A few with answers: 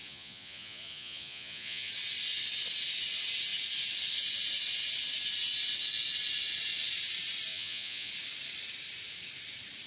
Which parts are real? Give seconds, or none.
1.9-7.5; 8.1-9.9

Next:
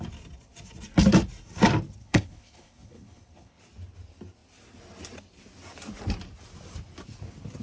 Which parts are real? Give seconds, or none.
0.0-2.0; 3.6-7.6

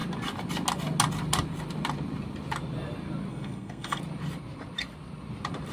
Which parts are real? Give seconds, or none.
0.0-3.3; 4.0-5.7